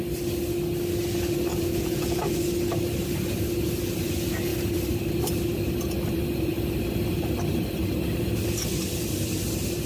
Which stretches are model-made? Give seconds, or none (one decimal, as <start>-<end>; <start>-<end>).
1.5-2.4